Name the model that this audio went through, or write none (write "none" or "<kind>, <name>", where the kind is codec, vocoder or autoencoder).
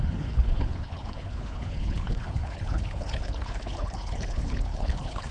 codec, HILCodec